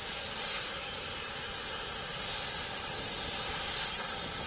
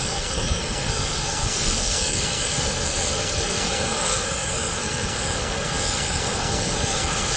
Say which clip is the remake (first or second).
second